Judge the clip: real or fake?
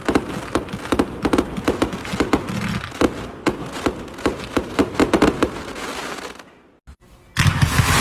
real